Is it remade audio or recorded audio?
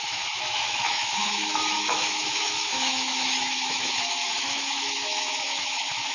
remade